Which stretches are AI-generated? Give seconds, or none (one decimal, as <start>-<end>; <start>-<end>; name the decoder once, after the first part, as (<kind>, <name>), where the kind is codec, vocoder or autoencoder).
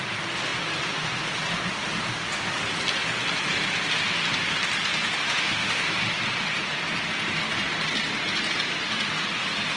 5.2-5.9 (autoencoder, DAC-VAE)